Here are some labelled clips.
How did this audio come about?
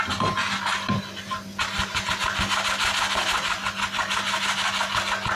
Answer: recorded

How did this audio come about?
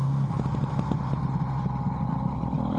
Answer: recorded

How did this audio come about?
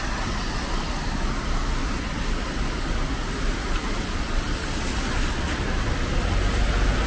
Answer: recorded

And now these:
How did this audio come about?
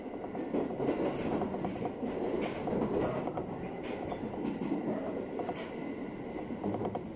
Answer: recorded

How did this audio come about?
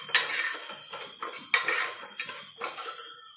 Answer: recorded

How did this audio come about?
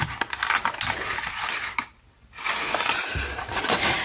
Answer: recorded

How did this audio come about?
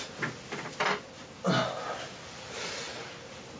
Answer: recorded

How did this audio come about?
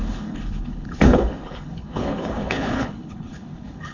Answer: remade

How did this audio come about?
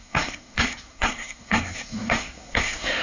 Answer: remade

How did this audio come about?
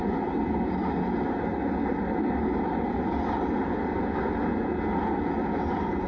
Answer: recorded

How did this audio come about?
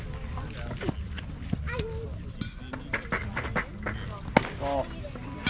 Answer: recorded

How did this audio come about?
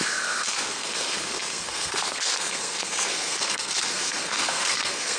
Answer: remade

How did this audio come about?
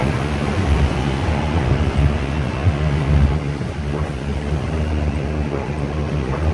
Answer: remade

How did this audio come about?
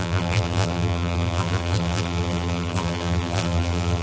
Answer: remade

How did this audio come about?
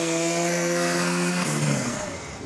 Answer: remade